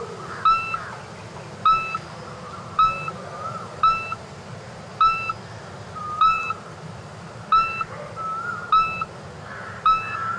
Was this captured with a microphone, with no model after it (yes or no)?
yes